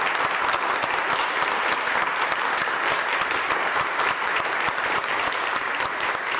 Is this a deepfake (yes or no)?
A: yes